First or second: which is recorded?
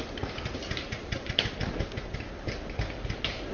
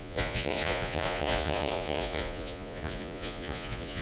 first